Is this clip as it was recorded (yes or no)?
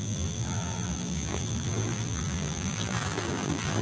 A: no